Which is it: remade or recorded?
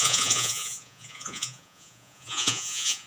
remade